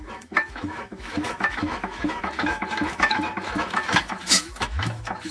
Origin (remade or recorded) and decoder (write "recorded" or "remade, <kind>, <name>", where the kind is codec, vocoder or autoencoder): remade, autoencoder, DAC-VAE